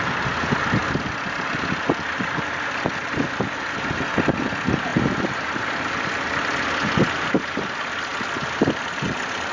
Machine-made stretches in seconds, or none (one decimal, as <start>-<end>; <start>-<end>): 4.9-5.9